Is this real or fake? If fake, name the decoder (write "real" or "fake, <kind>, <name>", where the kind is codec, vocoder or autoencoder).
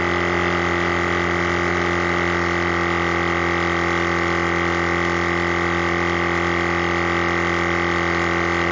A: real